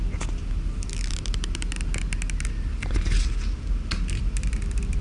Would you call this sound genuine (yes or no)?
yes